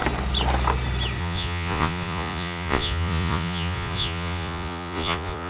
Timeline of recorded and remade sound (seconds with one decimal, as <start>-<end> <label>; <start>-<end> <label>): 0.0-1.2 recorded; 1.2-5.5 remade